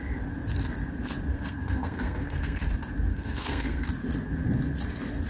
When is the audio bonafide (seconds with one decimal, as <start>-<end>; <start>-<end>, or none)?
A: 0.0-1.3; 2.7-3.1; 3.9-5.3